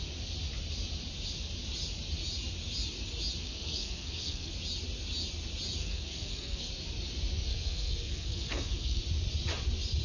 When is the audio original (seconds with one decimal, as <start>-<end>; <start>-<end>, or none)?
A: 0.0-3.4; 4.5-5.8; 6.7-7.5; 9.0-10.0